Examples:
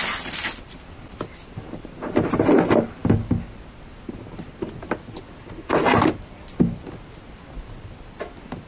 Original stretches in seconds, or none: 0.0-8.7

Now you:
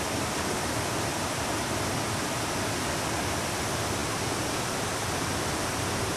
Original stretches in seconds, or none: 0.0-1.1; 1.7-6.2

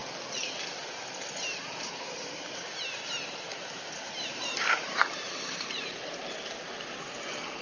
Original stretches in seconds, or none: 0.0-4.6; 6.2-7.6

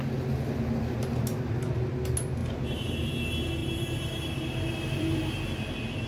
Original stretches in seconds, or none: 0.0-2.4; 3.1-3.6; 5.3-6.1

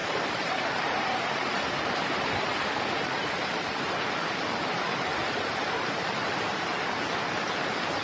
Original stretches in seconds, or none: 4.1-5.1; 6.8-8.0

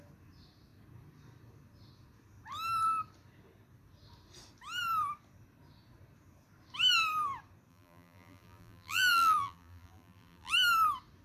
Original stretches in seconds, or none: 0.0-7.7; 10.5-11.2

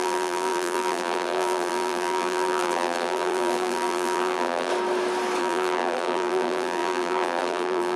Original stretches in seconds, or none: 4.7-5.4

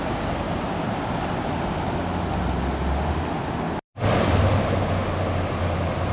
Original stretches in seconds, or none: 1.0-6.1